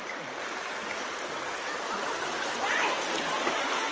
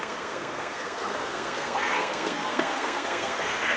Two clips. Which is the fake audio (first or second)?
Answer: second